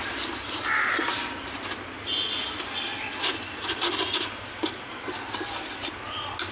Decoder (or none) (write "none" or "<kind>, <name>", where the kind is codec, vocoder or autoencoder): none